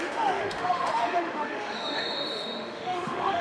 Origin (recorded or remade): remade